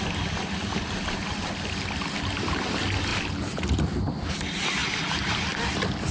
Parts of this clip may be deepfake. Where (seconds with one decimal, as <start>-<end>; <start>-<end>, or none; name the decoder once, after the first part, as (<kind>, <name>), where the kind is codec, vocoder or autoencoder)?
none